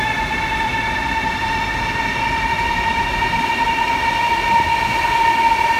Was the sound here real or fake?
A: real